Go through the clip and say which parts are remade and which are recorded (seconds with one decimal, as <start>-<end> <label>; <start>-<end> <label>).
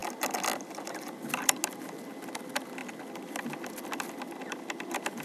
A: 0.0-5.2 recorded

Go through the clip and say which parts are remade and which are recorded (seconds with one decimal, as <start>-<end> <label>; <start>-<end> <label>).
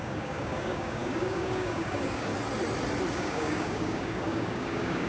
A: 0.0-2.3 remade; 2.3-3.1 recorded; 3.1-5.1 remade